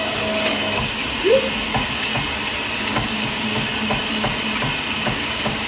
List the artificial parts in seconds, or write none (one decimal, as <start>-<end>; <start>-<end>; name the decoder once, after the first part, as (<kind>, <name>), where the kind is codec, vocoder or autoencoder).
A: 0.0-1.0 (codec, DAC); 1.6-2.1; 2.8-3.7; 4.9-5.7